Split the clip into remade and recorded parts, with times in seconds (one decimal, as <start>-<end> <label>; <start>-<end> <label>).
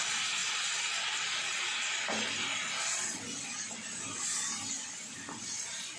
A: 0.0-6.0 recorded